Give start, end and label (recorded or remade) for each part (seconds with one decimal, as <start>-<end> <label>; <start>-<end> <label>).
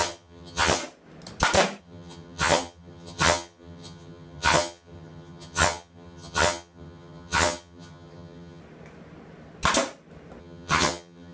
0.0-0.8 remade; 0.8-1.8 recorded; 1.8-8.6 remade; 8.6-10.4 recorded; 10.4-11.3 remade